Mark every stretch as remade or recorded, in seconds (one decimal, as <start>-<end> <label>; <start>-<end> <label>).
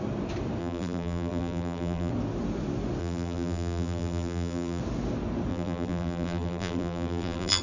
0.0-0.6 recorded; 0.6-2.1 remade; 2.1-3.0 recorded; 3.0-4.8 remade; 4.8-5.5 recorded; 5.5-7.6 remade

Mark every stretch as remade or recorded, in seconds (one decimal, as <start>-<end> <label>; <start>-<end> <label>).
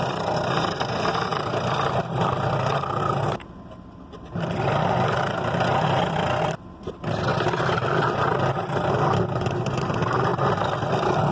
0.0-11.3 recorded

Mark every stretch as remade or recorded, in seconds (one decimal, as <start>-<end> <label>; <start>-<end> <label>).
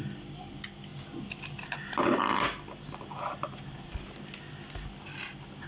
0.0-5.7 recorded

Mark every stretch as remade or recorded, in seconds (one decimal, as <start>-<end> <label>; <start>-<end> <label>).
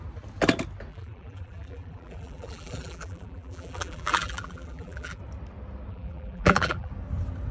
0.0-0.9 recorded; 0.9-5.2 remade; 5.2-5.9 recorded; 5.9-6.9 remade; 6.9-7.5 recorded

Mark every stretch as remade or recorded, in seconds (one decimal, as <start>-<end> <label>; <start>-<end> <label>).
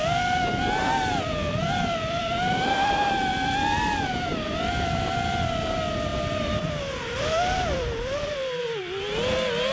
0.0-1.6 recorded; 1.6-3.3 remade; 3.3-6.1 recorded; 6.1-8.8 remade; 8.8-9.7 recorded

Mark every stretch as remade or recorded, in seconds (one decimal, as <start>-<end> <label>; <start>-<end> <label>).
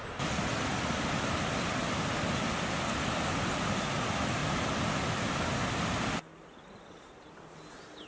0.0-4.4 recorded; 4.4-6.1 remade; 6.1-8.1 recorded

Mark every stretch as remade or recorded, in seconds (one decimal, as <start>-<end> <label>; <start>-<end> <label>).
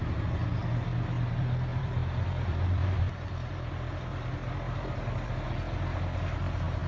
0.0-1.7 recorded; 1.7-5.0 remade; 5.0-6.9 recorded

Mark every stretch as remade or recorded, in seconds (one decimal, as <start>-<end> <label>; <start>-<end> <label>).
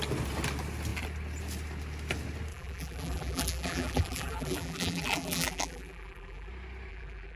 0.0-2.5 recorded; 2.5-6.5 remade; 6.5-6.9 recorded; 6.9-7.4 remade